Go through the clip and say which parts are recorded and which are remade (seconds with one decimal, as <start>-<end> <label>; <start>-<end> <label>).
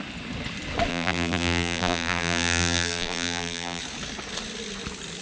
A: 0.0-0.9 recorded; 0.9-3.8 remade; 3.8-5.2 recorded